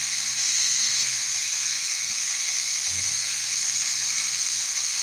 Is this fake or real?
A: fake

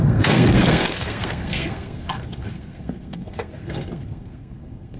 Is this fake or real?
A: fake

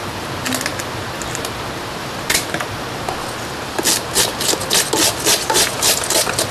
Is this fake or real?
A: real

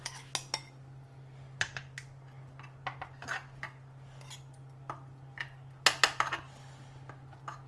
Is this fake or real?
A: real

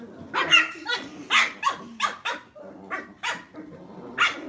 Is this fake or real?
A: real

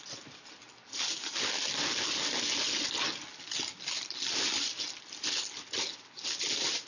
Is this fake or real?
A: real